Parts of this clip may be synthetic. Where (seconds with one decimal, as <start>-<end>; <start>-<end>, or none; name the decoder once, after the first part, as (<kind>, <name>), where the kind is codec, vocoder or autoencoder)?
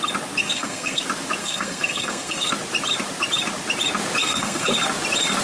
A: 0.4-1.0 (codec, SNAC); 1.4-2.5; 4.2-4.7